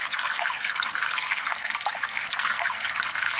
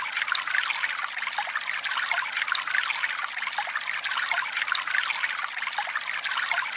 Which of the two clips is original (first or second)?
second